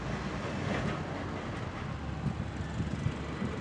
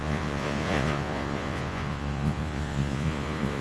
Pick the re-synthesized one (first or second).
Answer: second